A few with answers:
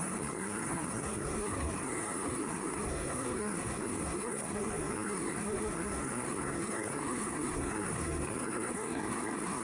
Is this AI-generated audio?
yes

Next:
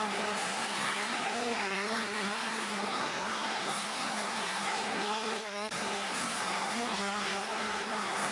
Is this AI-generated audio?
yes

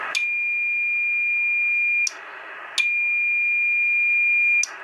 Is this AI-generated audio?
no